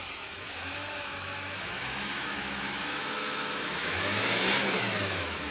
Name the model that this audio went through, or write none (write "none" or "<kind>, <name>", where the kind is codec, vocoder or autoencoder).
autoencoder, DAC-VAE